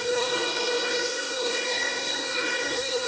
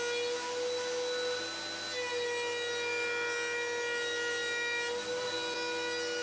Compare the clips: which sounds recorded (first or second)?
second